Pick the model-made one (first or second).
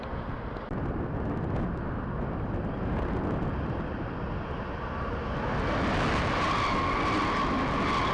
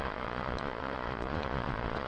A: second